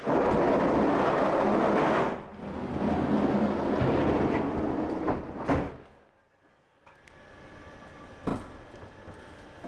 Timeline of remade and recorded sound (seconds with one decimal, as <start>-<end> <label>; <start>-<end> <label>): 0.0-9.7 recorded